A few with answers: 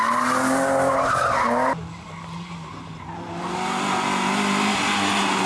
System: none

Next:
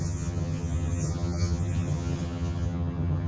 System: vocoder, HiFi-GAN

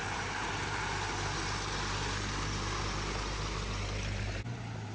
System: none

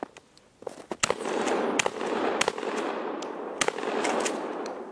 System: none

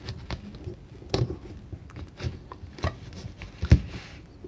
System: none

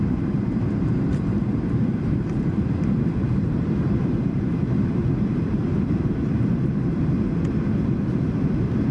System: vocoder, BigVGAN v2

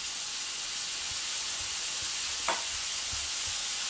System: vocoder, Vocos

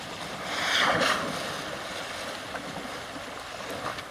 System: none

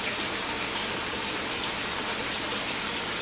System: none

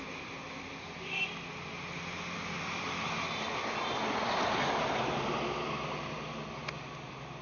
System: none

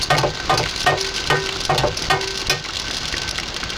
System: none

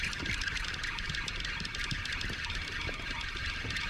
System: vocoder, BigVGAN v2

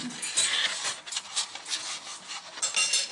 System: none